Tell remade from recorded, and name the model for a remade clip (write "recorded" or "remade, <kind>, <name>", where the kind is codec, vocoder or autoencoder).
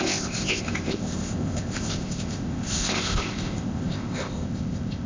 remade, codec, ZipCodec